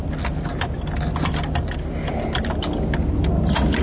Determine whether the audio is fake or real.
real